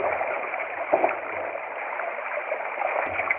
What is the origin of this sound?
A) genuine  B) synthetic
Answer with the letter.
A